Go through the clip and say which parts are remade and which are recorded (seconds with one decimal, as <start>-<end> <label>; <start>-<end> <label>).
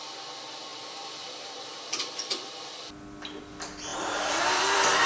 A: 0.0-0.7 recorded; 0.7-2.9 remade; 2.9-3.9 recorded; 3.9-5.1 remade